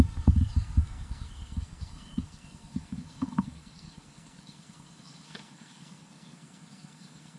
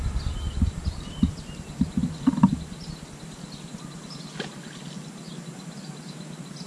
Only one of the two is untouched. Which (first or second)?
second